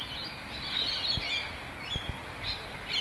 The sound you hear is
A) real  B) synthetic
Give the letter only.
A